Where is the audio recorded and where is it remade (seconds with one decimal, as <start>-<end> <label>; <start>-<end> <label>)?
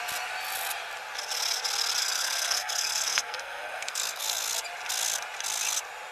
0.0-2.0 recorded; 2.0-4.5 remade; 4.5-6.1 recorded